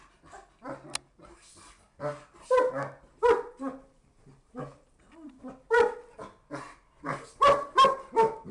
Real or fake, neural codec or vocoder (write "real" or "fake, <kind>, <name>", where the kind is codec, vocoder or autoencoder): real